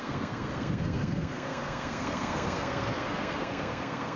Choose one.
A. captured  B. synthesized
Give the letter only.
B